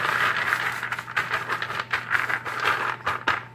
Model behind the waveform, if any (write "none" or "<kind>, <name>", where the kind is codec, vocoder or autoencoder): none